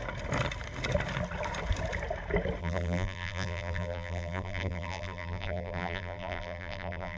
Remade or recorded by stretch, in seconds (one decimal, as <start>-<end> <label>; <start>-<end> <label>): 0.0-2.6 recorded; 2.6-7.2 remade